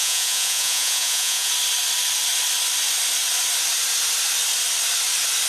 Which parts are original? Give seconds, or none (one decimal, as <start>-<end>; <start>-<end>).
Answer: 1.5-5.5